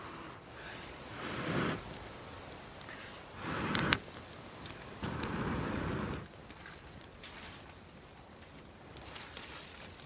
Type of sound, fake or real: fake